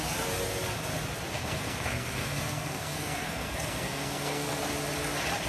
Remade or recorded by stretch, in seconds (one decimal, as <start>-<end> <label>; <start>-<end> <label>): 0.0-1.3 recorded; 1.3-4.6 remade; 4.6-5.5 recorded

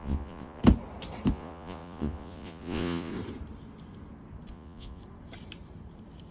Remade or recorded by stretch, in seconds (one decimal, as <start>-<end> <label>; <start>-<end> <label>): 0.0-0.6 remade; 0.6-1.3 recorded; 1.3-3.1 remade; 3.1-4.5 recorded; 4.5-5.0 remade; 5.0-6.3 recorded

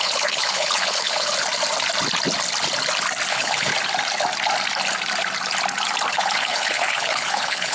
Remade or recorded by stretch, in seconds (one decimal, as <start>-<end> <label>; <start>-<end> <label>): 0.0-1.3 remade; 1.3-3.3 recorded; 3.3-3.7 remade; 3.7-6.1 recorded; 6.1-7.7 remade

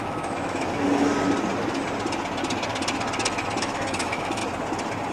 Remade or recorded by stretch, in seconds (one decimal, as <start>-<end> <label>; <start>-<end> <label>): 0.0-1.1 remade; 1.1-3.6 recorded; 3.6-4.4 remade; 4.4-5.1 recorded

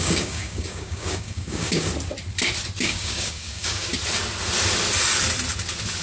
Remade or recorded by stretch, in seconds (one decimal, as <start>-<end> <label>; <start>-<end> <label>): 0.0-1.9 remade; 1.9-2.8 recorded; 2.8-3.9 remade; 3.9-6.0 recorded

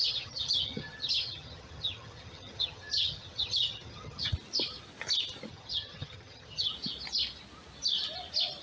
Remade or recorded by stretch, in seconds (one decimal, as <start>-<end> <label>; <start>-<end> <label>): 0.0-4.3 remade; 4.3-5.5 recorded; 5.5-6.7 remade; 6.7-8.6 recorded

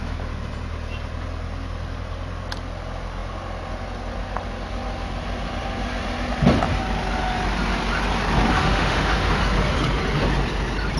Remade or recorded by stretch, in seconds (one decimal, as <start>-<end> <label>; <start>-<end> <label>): 0.0-8.5 recorded; 8.5-9.4 remade; 9.4-11.0 recorded